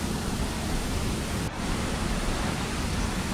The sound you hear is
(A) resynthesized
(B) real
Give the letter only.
B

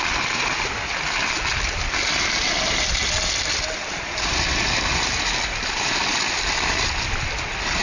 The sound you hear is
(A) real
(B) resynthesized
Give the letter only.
A